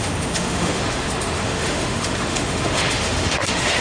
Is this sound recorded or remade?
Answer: remade